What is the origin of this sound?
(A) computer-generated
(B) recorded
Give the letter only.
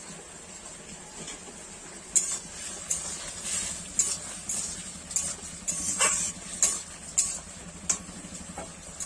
B